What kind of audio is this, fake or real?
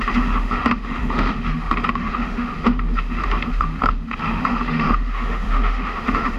fake